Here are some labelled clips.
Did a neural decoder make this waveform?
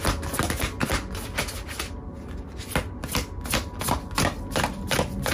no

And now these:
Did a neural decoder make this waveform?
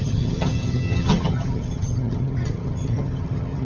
yes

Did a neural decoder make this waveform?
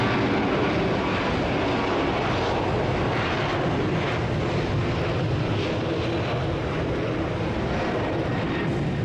no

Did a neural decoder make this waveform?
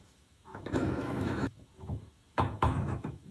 yes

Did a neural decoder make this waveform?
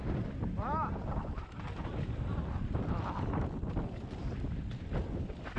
no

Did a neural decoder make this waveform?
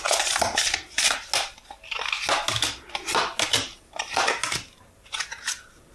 no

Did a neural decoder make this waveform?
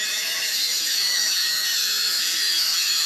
yes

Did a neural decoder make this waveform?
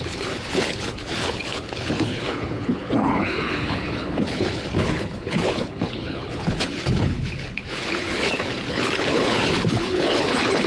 yes